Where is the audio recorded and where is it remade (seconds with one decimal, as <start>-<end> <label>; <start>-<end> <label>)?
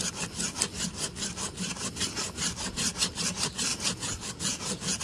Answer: 0.0-3.7 recorded; 3.7-5.0 remade